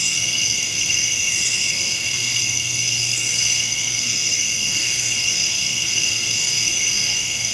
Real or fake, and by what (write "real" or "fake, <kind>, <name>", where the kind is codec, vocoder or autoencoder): fake, codec, SNAC